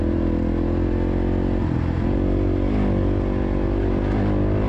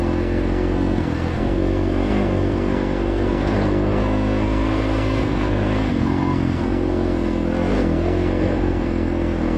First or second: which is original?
first